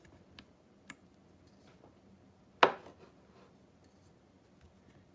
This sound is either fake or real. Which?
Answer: real